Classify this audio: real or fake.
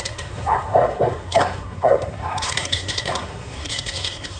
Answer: fake